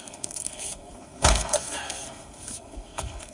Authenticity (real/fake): fake